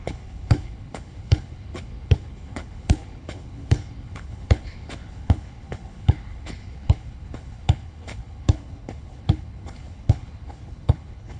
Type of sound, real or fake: fake